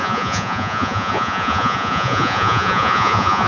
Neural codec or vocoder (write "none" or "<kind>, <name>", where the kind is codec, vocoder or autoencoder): vocoder, Vocos